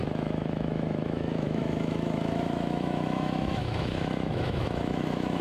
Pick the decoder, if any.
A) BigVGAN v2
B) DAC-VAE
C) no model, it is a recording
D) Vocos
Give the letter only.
B